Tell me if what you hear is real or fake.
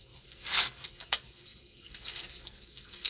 fake